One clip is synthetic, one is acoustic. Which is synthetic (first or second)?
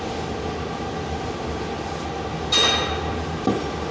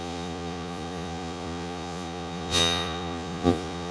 second